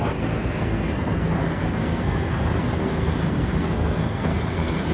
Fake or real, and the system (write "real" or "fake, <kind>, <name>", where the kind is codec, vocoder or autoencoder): fake, codec, SNAC